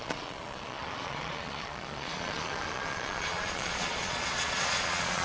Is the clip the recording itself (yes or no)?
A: no